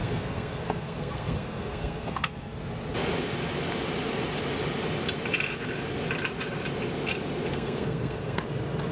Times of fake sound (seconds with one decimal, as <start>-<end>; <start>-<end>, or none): 0.0-2.6; 7.5-8.4